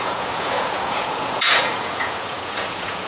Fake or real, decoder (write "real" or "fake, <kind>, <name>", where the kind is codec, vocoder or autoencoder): fake, vocoder, Vocos